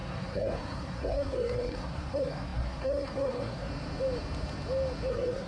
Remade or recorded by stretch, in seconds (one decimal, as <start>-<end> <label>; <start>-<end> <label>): 0.0-3.7 remade; 3.7-5.1 recorded; 5.1-5.5 remade